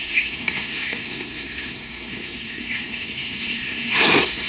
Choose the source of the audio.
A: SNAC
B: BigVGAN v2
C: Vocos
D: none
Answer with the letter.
A